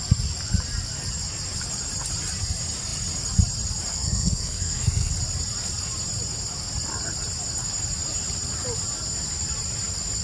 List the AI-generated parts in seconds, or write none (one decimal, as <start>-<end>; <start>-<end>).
3.9-5.1

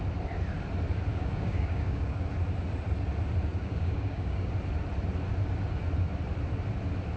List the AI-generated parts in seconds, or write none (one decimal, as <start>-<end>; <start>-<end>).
1.1-2.2; 3.5-4.5

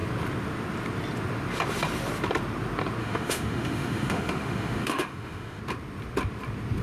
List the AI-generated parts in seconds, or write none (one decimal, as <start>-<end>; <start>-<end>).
3.0-5.6